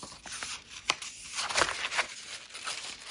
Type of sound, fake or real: real